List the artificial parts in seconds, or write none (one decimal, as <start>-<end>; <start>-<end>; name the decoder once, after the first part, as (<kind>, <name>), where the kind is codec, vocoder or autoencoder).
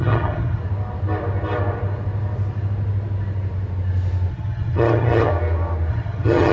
0.0-0.6 (vocoder, HiFi-GAN); 4.3-5.3; 5.9-6.5